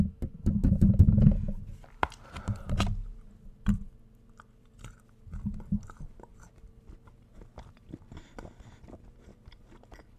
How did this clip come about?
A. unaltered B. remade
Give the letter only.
A